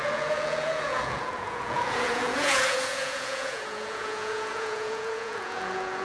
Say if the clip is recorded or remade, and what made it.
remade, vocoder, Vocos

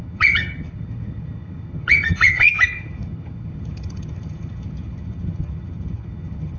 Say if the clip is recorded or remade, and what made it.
remade, vocoder, HiFi-GAN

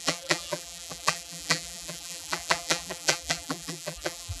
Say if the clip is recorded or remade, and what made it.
remade, vocoder, BigVGAN v2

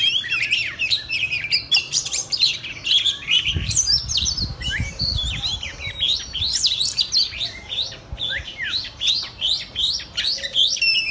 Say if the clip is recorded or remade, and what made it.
remade, vocoder, BigVGAN v2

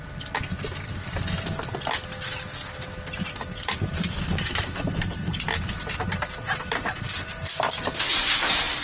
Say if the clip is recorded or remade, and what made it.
recorded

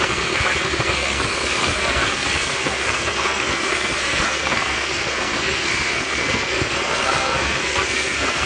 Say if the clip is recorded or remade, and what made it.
remade, codec, SNAC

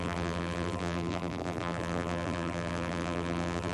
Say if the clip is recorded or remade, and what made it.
remade, vocoder, BigVGAN v2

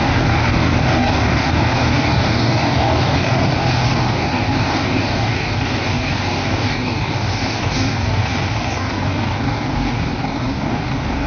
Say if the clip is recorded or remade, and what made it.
remade, codec, DAC